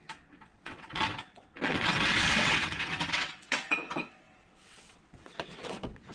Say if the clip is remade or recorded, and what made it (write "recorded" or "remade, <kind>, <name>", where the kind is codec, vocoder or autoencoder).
remade, vocoder, WaveNeXt